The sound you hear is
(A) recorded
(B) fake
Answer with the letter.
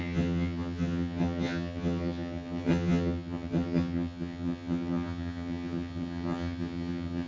B